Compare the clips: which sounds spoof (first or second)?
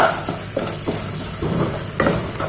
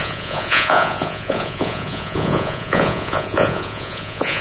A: second